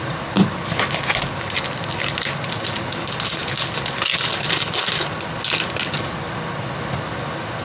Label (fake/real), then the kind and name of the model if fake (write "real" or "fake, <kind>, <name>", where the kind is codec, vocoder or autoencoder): real